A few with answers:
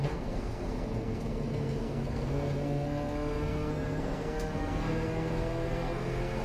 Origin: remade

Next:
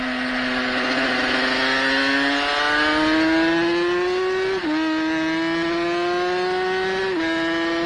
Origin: recorded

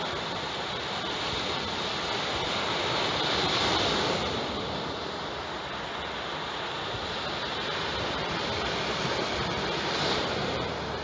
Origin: recorded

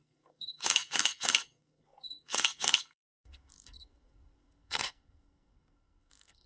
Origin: remade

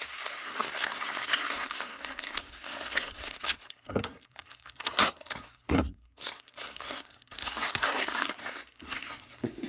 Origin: remade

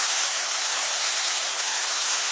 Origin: remade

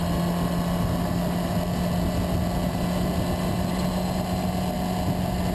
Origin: recorded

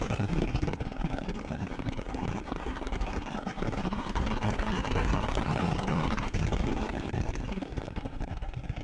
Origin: remade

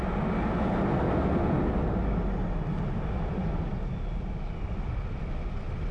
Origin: recorded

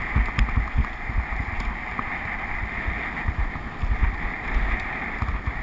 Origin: recorded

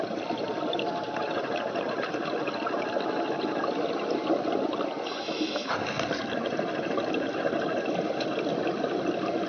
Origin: recorded